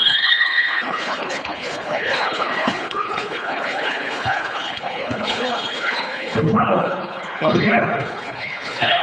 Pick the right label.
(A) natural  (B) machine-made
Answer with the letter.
B